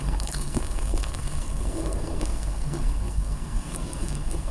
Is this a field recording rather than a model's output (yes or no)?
no